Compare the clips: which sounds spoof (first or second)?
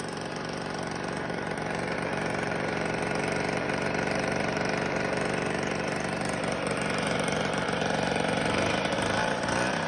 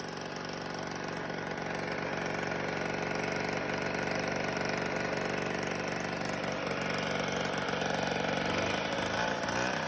first